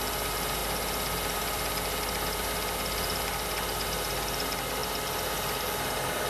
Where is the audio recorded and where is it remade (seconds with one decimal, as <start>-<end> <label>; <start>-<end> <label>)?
0.0-6.3 recorded